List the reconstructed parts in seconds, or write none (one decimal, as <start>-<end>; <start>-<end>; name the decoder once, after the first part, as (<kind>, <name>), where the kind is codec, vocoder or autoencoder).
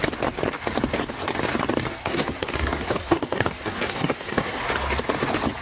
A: 2.0-4.6 (codec, SNAC)